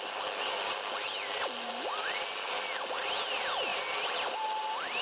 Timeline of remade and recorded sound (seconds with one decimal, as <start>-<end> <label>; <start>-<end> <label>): 0.0-5.0 recorded